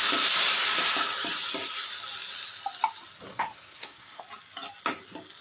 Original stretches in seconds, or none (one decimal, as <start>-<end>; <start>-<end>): 0.0-3.3; 4.2-5.4